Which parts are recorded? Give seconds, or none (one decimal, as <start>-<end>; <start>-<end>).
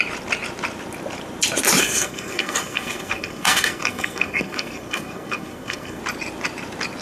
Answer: 0.0-1.8; 6.0-7.0